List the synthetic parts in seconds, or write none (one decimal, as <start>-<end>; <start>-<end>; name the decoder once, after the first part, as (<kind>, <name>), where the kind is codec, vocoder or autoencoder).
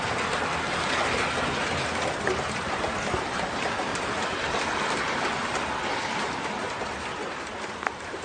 3.9-7.1 (vocoder, BigVGAN v2)